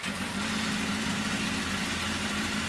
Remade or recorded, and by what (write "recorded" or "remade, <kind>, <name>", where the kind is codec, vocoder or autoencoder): recorded